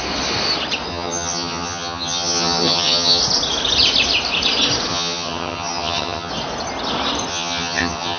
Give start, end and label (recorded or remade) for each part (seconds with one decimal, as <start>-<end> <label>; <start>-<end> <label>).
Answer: 0.0-0.9 recorded; 0.9-3.2 remade; 3.2-4.9 recorded; 4.9-6.3 remade; 6.3-7.3 recorded; 7.3-8.2 remade